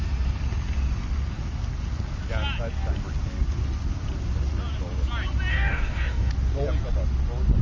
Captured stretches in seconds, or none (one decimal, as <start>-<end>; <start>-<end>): 0.0-5.5; 6.3-7.6